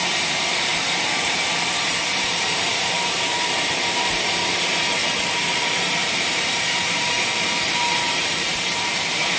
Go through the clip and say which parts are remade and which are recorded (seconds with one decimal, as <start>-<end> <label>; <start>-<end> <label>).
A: 0.0-5.0 remade; 5.0-5.6 recorded; 5.6-9.4 remade